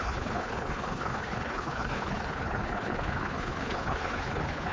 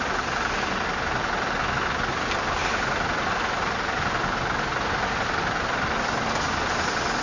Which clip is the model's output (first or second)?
first